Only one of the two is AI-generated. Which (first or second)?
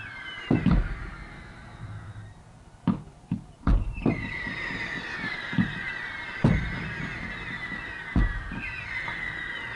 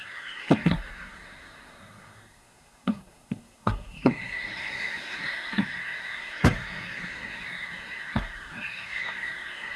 second